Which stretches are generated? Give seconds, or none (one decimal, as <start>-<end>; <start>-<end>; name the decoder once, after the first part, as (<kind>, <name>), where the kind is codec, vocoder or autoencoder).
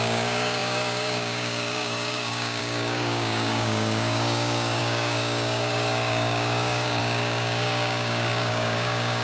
0.0-9.2 (codec, DAC)